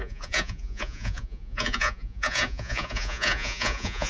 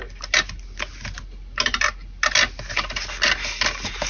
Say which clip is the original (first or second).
second